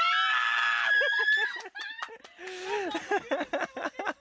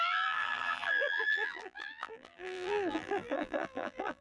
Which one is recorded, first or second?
first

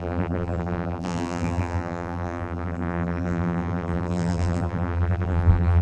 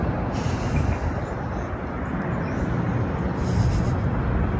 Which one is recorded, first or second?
second